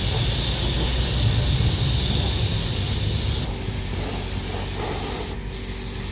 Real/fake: real